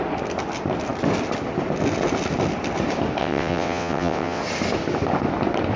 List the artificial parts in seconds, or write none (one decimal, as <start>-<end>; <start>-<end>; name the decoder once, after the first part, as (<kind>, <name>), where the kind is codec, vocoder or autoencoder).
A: 3.2-4.4 (vocoder, WaveNeXt)